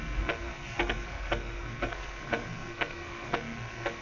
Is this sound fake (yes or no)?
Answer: yes